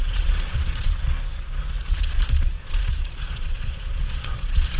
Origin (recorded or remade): remade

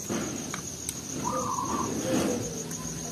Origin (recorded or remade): recorded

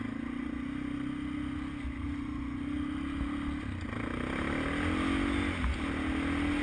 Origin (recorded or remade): recorded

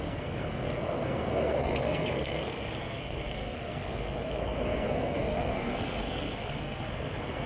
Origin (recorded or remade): remade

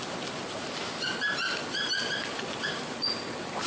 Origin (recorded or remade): recorded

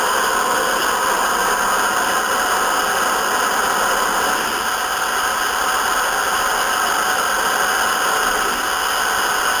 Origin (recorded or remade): recorded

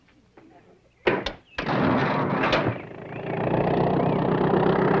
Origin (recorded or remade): recorded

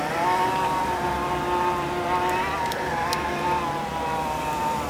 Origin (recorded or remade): recorded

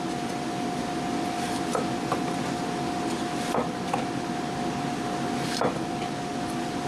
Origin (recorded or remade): recorded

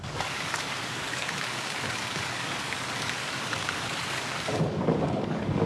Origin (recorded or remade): remade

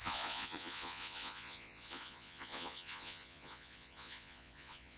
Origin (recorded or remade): remade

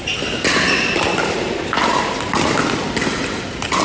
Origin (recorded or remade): recorded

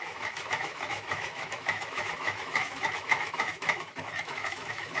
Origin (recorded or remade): remade